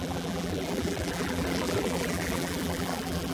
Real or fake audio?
fake